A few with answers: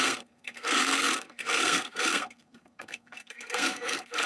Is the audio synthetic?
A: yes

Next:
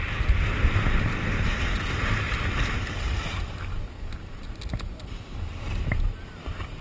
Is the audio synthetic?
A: no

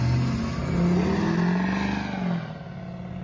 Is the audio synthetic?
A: no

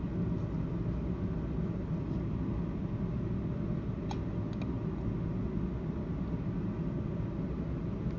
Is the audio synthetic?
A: no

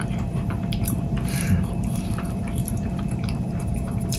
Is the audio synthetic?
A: yes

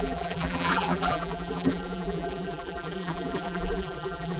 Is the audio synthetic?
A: yes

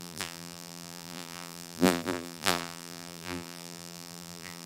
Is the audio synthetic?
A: yes